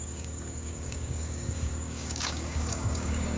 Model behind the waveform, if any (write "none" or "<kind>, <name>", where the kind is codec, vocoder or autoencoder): codec, DAC